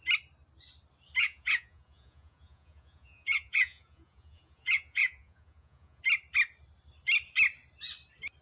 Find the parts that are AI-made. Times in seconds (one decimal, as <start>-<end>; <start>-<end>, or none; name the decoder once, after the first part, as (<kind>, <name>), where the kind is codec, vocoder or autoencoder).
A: 1.2-6.0 (vocoder, Vocos)